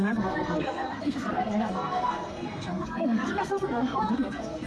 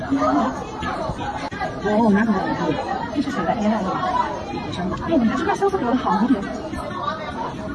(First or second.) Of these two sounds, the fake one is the first